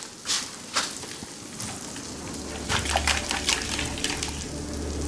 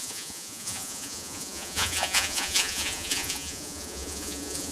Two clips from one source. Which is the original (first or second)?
first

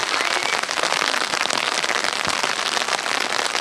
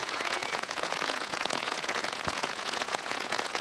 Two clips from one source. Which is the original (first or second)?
first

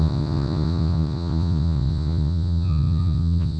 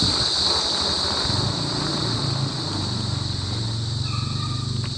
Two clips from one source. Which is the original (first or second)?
second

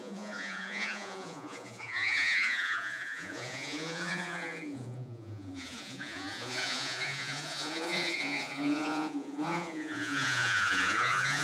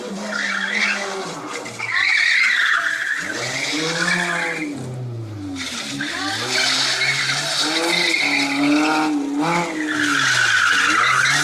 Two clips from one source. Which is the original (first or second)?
second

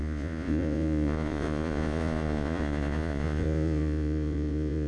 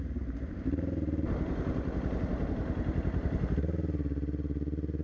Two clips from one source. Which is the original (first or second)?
second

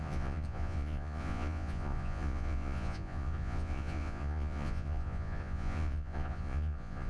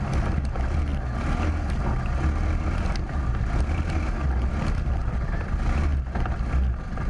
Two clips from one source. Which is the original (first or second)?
second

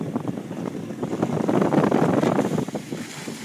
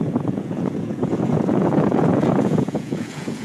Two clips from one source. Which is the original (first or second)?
first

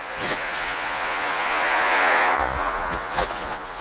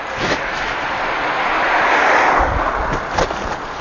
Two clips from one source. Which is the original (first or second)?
second